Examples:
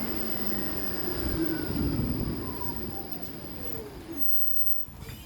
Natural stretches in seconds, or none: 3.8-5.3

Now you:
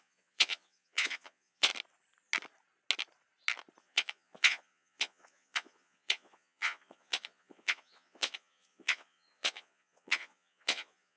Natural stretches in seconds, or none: 1.7-3.8

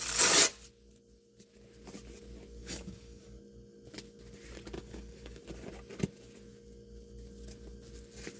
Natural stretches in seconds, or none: 0.0-2.6; 3.2-4.8; 5.4-8.4